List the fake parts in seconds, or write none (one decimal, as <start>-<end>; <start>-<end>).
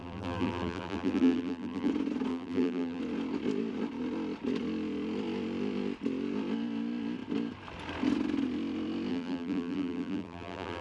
0.0-1.9; 2.3-3.0; 9.1-10.8